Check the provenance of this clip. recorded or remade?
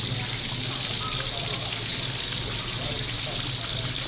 recorded